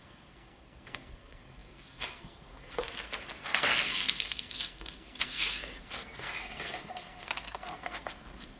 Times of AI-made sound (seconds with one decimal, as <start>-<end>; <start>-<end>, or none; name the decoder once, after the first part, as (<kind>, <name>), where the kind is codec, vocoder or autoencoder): 0.0-8.6 (codec, SNAC)